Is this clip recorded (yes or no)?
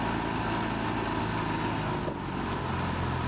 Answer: yes